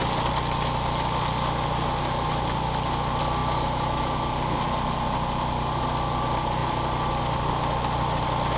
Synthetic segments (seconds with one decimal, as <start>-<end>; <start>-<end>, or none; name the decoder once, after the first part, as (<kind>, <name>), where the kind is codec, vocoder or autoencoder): none